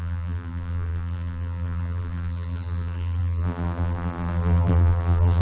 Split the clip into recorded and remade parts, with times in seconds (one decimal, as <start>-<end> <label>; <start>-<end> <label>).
0.0-5.4 remade